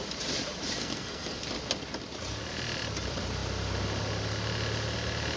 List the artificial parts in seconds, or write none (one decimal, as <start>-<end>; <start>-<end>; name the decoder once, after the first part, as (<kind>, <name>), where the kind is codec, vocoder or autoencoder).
0.8-1.4 (codec, SNAC)